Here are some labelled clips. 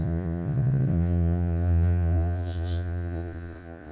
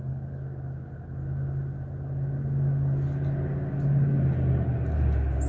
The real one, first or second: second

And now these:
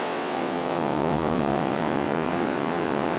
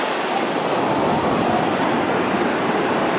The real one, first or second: second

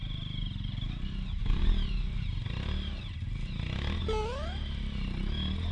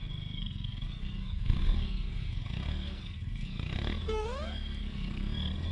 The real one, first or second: first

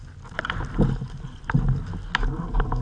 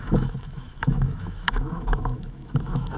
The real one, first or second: first